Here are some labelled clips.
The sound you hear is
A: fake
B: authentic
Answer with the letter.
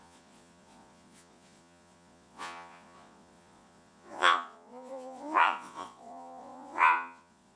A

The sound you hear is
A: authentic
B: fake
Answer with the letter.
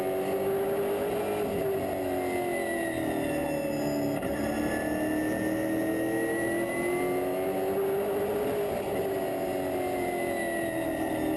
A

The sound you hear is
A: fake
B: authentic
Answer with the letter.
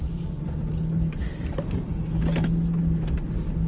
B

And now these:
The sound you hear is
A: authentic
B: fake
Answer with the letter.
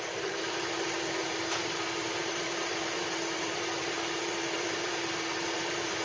B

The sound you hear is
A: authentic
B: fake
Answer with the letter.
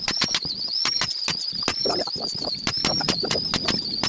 A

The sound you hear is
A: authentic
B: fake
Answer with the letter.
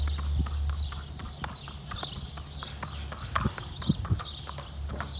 A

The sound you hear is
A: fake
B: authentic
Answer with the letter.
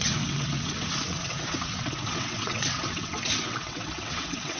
A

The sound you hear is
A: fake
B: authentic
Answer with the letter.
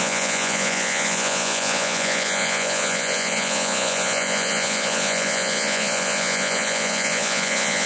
A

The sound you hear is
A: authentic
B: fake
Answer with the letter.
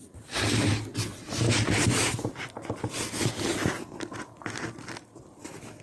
A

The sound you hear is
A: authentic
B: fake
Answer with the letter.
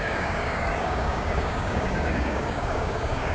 B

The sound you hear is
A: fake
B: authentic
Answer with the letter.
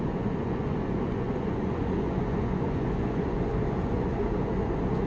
A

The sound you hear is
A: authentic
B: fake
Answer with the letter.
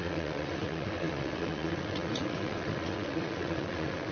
B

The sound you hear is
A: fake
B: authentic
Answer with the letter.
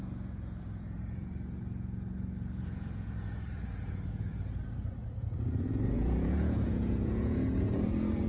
A